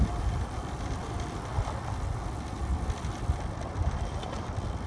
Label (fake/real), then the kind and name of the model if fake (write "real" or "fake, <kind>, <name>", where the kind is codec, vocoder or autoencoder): real